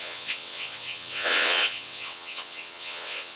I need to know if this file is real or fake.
fake